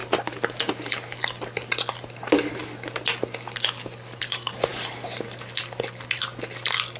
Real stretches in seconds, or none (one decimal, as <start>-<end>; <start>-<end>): 0.0-4.2; 4.7-7.0